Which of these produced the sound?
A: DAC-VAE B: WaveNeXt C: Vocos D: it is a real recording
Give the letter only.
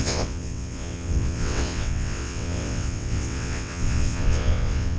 B